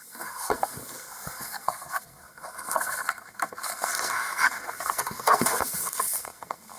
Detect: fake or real fake